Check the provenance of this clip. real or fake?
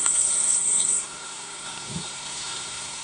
fake